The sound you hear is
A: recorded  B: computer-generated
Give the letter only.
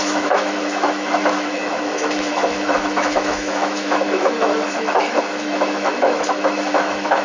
B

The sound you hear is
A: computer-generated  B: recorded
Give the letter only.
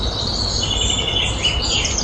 B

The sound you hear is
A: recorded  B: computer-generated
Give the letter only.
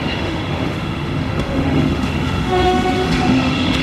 B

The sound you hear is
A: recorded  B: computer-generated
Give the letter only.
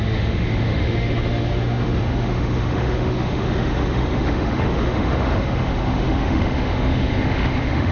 B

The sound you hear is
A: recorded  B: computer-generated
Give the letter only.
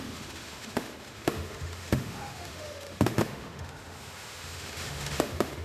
B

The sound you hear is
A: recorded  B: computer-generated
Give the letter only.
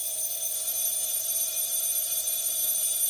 A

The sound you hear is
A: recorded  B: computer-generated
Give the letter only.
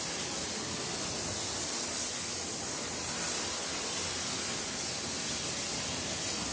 A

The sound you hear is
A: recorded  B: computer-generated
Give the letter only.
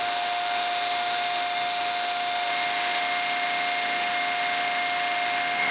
B